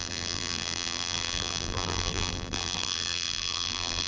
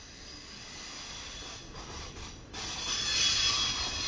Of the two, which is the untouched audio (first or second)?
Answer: second